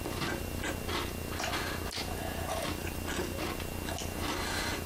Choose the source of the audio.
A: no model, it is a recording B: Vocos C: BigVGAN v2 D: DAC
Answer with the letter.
A